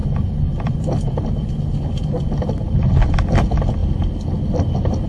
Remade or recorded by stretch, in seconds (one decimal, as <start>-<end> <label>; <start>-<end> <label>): 0.0-3.1 remade; 3.1-5.1 recorded